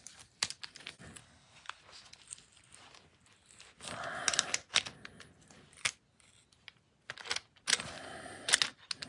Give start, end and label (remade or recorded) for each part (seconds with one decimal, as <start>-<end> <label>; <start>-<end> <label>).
0.0-1.2 recorded; 1.2-1.8 remade; 1.8-9.1 recorded